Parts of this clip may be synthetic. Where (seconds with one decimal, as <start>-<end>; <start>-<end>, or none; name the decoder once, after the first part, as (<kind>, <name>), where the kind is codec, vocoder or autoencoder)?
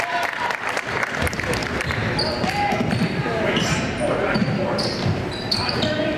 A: 0.0-1.6 (vocoder, BigVGAN v2); 2.9-6.2